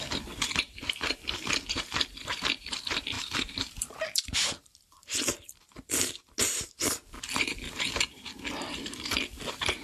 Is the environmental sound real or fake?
fake